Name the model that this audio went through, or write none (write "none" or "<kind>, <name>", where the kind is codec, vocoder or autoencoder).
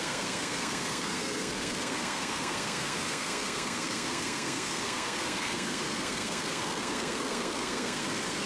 codec, SNAC